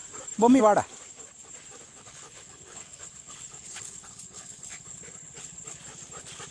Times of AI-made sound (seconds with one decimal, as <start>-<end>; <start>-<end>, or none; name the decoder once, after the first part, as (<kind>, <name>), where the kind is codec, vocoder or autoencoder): 1.9-5.8 (codec, HILCodec)